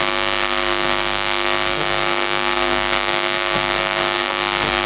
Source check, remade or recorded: remade